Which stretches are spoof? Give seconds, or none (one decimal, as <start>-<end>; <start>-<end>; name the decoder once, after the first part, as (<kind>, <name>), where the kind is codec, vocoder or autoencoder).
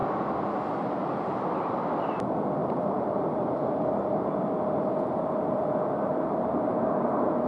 0.0-0.6 (vocoder, BigVGAN v2); 1.0-1.7; 2.6-5.0; 6.1-7.5